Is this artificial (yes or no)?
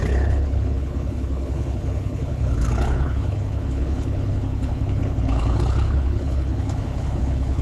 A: yes